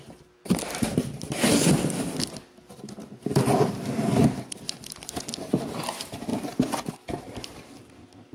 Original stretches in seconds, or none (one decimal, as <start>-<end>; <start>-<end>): 6.3-6.9